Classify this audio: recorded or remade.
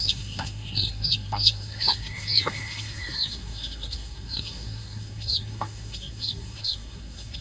remade